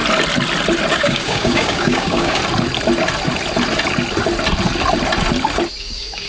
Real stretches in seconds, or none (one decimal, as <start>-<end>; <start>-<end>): 0.0-0.9; 2.4-5.8